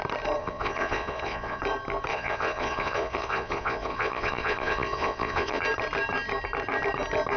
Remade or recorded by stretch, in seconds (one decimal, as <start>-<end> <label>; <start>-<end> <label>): 0.0-0.4 recorded; 0.4-1.6 remade; 1.6-2.1 recorded; 2.1-5.6 remade; 5.6-7.4 recorded